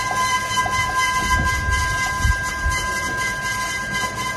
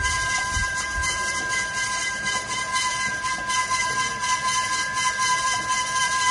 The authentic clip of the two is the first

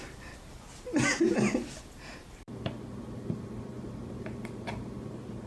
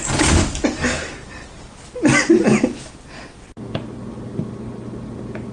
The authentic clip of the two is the second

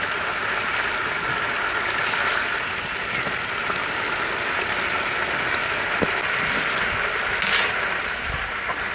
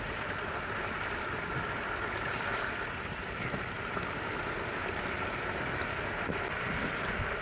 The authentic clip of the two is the first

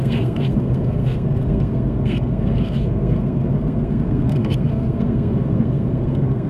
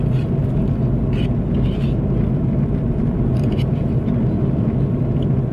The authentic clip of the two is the second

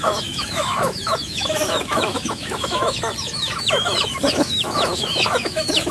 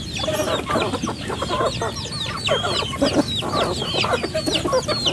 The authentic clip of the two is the second